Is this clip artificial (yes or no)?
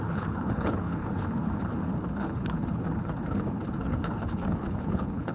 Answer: yes